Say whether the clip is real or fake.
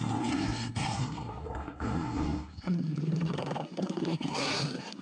fake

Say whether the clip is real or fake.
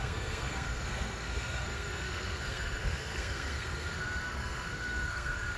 fake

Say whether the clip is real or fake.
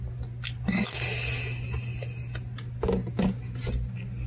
real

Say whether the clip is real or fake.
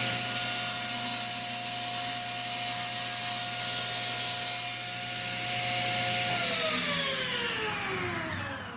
real